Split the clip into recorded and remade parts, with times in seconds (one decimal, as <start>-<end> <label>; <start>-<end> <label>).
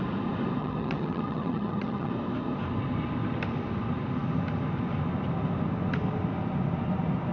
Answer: 0.0-0.6 recorded; 0.6-2.1 remade; 2.1-7.3 recorded